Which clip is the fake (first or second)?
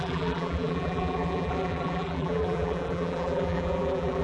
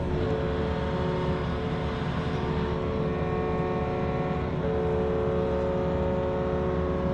first